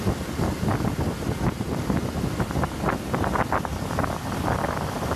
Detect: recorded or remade recorded